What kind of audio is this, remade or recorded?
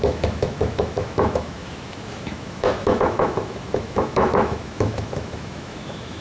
remade